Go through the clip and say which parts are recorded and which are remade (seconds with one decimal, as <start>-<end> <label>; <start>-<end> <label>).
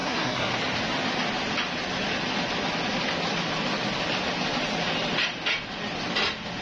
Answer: 0.0-0.5 remade; 0.5-6.6 recorded